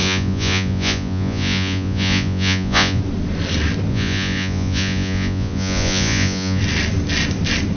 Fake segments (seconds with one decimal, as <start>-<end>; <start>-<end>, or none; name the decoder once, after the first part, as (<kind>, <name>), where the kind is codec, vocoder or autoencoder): 0.0-3.0 (vocoder, Vocos); 3.9-6.6